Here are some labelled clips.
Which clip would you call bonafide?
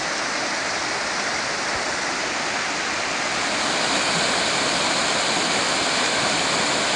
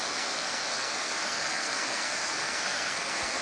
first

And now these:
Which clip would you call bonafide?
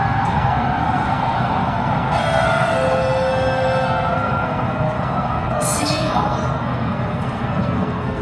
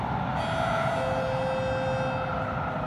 second